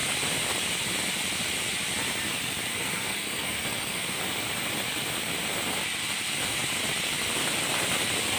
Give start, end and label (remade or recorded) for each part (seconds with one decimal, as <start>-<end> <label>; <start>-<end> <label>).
0.0-2.7 recorded; 2.7-4.2 remade; 4.2-8.4 recorded